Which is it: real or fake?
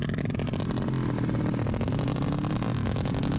real